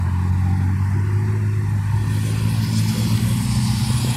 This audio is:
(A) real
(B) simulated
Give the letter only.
A